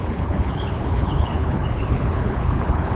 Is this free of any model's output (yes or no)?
no